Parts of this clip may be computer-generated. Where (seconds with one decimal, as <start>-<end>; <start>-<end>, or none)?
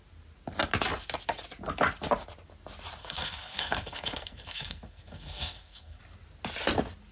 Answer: 3.0-6.0